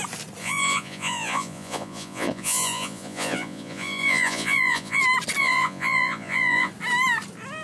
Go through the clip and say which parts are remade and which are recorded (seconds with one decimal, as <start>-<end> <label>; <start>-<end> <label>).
0.0-0.4 recorded; 0.4-5.0 remade; 5.0-5.4 recorded; 5.4-6.7 remade; 6.7-7.6 recorded